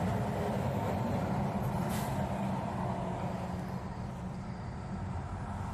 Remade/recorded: recorded